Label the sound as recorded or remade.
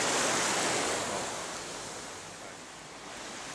recorded